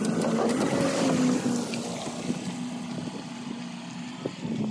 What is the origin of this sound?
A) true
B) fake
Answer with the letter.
A